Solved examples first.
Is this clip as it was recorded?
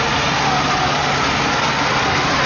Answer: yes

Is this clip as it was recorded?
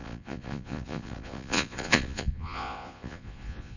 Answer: no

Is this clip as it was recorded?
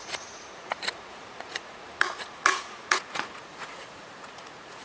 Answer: no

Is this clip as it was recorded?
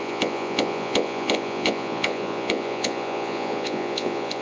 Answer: no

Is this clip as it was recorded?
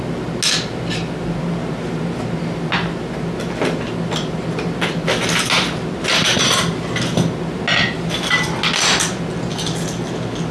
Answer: yes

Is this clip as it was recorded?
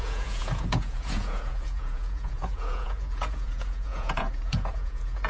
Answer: no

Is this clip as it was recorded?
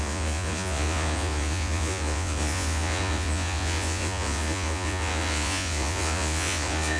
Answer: no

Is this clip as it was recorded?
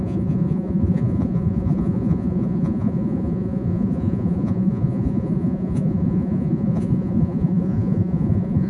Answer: no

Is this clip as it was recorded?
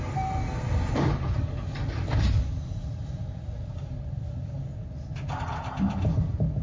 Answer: yes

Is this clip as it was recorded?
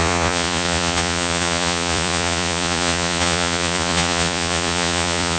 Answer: no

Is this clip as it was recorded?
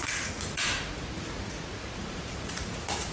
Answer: no